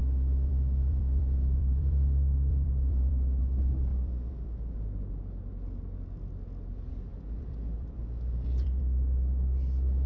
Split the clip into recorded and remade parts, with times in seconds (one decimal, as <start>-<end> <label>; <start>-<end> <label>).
0.0-0.9 recorded; 0.9-3.4 remade; 3.4-3.9 recorded; 3.9-4.7 remade; 4.7-7.1 recorded; 7.1-8.8 remade; 8.8-10.1 recorded